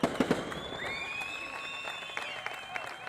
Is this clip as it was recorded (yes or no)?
yes